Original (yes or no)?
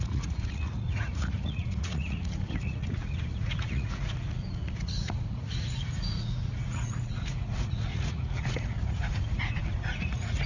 no